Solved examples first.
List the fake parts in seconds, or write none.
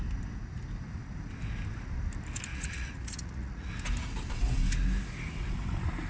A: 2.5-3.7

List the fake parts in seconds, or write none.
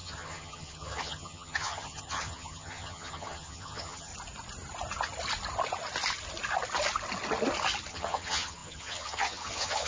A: 0.0-4.1; 7.9-9.9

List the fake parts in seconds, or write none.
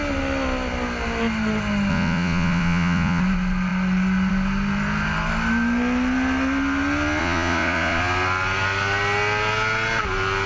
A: 1.9-3.2; 7.2-8.0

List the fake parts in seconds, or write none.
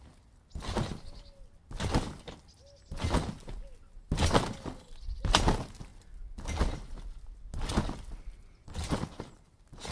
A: none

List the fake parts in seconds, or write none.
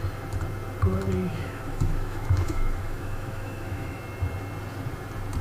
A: 1.3-4.0